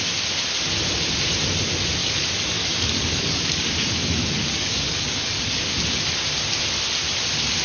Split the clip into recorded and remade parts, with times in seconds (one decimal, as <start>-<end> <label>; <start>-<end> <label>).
0.0-2.0 recorded; 2.0-4.0 remade; 4.0-4.4 recorded; 4.4-5.6 remade; 5.6-7.6 recorded